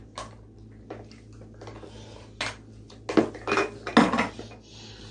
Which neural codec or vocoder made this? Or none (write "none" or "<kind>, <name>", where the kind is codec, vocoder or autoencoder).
none